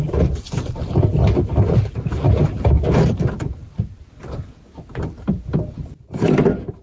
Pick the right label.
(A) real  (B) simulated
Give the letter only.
A